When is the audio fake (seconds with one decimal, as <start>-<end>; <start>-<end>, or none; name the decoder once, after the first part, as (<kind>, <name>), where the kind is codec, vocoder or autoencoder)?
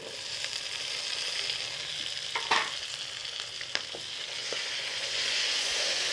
4.4-6.1 (vocoder, Vocos)